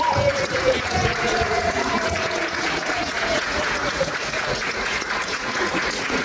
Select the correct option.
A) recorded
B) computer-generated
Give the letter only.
B